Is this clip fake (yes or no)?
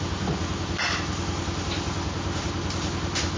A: no